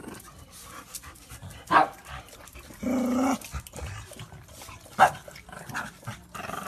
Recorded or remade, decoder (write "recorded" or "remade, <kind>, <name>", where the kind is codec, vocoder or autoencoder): recorded